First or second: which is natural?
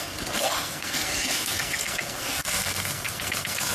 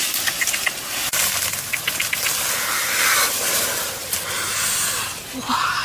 second